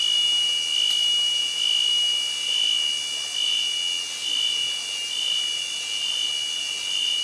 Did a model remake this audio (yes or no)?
no